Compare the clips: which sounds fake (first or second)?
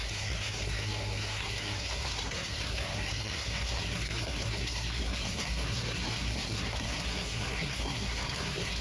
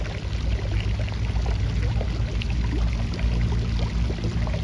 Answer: first